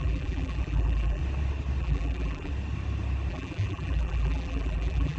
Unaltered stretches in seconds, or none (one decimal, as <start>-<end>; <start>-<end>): 1.2-1.8; 2.5-3.3